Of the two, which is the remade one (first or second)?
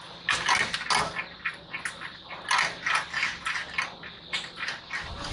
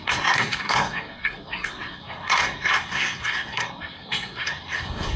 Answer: second